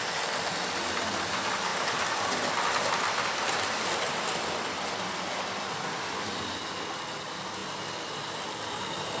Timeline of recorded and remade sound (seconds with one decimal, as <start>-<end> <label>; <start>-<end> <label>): 0.0-9.2 recorded